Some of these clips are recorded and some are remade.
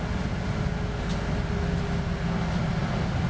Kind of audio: recorded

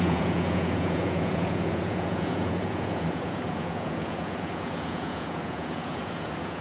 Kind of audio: remade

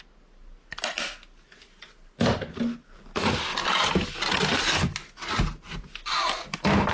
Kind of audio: recorded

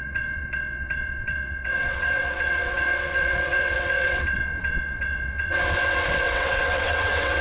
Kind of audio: remade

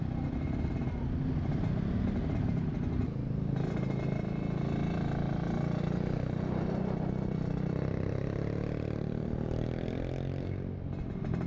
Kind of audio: recorded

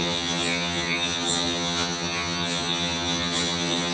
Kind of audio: remade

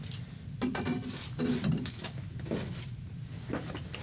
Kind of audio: recorded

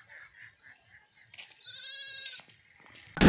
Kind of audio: recorded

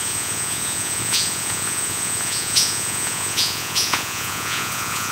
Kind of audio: remade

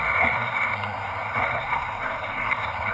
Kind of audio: remade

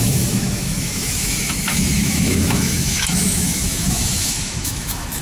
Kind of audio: remade